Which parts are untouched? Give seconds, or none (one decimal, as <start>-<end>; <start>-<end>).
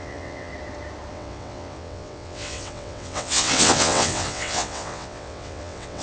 0.5-1.1